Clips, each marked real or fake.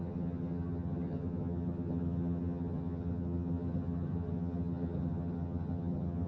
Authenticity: fake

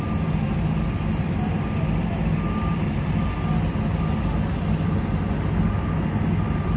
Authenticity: real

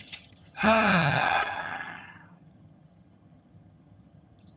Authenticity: fake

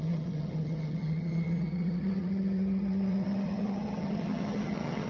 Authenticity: fake